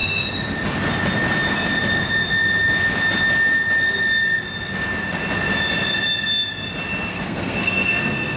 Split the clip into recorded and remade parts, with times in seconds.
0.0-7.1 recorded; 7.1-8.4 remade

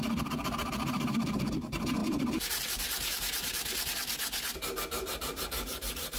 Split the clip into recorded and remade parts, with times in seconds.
0.0-2.0 remade; 2.0-2.6 recorded; 2.6-4.1 remade; 4.1-5.2 recorded; 5.2-6.2 remade

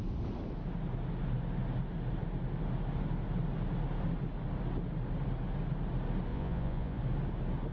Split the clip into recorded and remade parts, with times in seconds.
0.0-6.3 recorded; 6.3-7.0 remade; 7.0-7.7 recorded

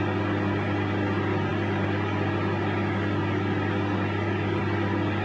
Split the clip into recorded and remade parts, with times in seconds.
0.0-5.2 recorded

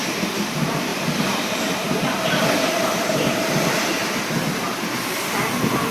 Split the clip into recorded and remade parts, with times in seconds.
0.0-4.0 remade; 4.0-5.9 recorded

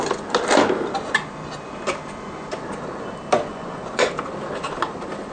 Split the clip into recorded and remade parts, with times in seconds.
0.0-3.5 recorded; 3.5-4.1 remade; 4.1-5.3 recorded

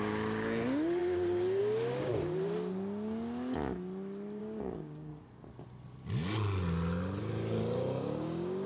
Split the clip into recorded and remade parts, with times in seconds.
0.0-2.1 remade; 2.1-4.4 recorded; 4.4-5.1 remade; 5.1-7.2 recorded; 7.2-8.7 remade

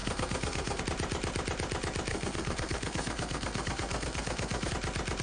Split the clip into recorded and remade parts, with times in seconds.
0.0-0.8 remade; 0.8-2.1 recorded; 2.1-4.7 remade; 4.7-5.2 recorded